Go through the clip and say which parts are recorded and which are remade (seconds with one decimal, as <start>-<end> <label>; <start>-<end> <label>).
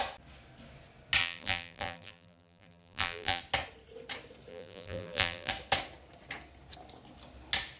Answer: 0.0-1.2 recorded; 1.2-3.4 remade; 3.4-4.5 recorded; 4.5-5.5 remade; 5.5-7.8 recorded